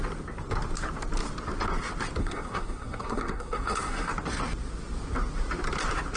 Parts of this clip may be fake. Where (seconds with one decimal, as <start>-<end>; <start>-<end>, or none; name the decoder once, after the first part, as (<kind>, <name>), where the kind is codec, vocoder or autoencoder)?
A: 2.2-4.1 (codec, SNAC)